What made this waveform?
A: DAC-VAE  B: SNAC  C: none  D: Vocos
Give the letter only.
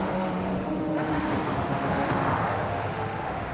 A